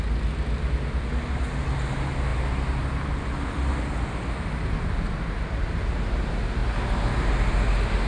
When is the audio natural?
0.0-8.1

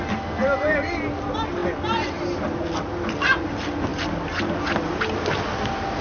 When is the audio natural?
0.0-6.0

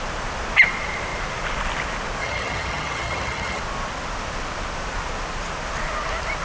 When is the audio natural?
0.0-2.2; 3.6-6.4

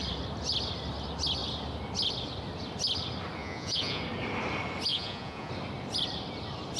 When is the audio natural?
0.0-3.4; 4.0-4.9; 5.5-6.8